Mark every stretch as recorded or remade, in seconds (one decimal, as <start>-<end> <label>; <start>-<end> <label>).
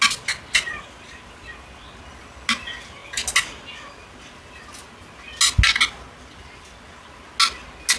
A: 0.0-8.0 recorded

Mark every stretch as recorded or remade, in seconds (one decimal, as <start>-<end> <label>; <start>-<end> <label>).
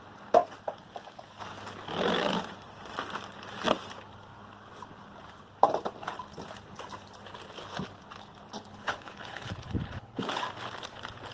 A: 0.0-8.7 recorded; 8.7-10.4 remade; 10.4-11.3 recorded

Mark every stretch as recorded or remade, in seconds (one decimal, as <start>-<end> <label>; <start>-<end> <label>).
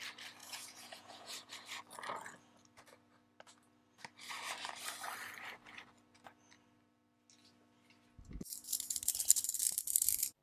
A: 0.0-0.4 recorded; 0.4-1.5 remade; 1.5-10.4 recorded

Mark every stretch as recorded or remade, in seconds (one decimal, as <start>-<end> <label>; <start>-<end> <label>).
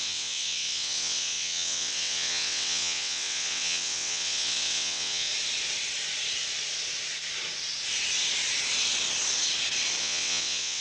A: 0.0-5.3 remade; 5.3-10.0 recorded; 10.0-10.8 remade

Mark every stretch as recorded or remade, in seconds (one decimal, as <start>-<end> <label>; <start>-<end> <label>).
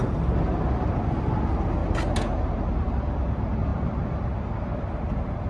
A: 0.0-5.5 recorded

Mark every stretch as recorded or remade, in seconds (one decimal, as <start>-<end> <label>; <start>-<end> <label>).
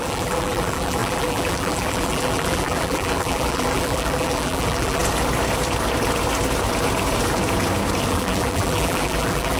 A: 0.0-5.0 remade; 5.0-8.1 recorded; 8.1-9.6 remade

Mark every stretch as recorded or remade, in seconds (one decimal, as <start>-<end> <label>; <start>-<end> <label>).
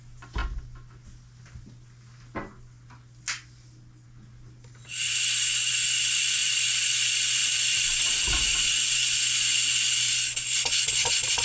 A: 0.0-6.4 recorded; 6.4-6.9 remade; 6.9-7.4 recorded; 7.4-8.1 remade; 8.1-11.4 recorded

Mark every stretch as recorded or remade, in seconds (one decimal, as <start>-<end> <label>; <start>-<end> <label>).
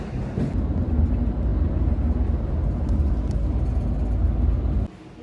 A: 0.0-5.2 recorded